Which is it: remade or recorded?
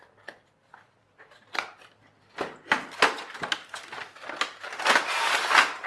recorded